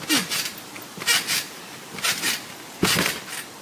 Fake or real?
real